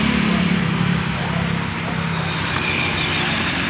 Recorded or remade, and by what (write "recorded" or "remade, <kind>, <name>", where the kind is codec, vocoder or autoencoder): recorded